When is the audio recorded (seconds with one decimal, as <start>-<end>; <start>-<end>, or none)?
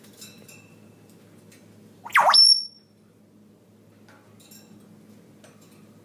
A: 0.0-2.1; 3.2-6.0